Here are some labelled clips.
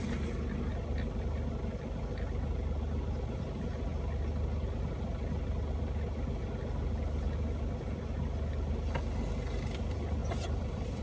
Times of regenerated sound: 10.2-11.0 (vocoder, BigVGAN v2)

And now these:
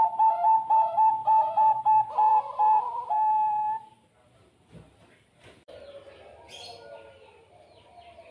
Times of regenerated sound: 2.3-6.2 (vocoder, BigVGAN v2)

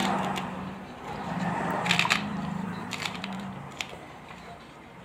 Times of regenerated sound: 0.0-1.9 (vocoder, BigVGAN v2); 2.3-4.6

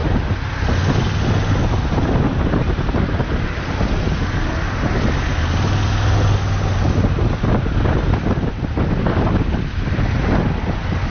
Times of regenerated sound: none